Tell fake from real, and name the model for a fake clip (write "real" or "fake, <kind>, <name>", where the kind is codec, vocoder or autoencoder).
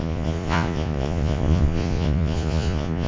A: fake, vocoder, Vocos